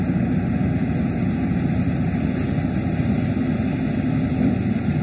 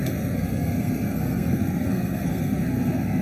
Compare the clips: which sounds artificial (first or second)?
second